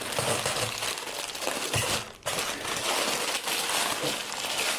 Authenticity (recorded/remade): recorded